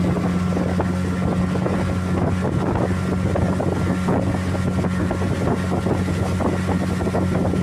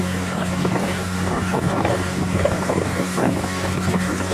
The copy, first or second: second